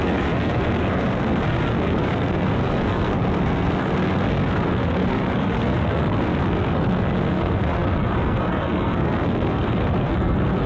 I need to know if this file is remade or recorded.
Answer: remade